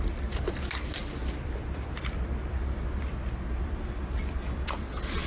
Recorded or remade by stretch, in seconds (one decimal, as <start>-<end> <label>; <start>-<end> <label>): 0.0-5.3 recorded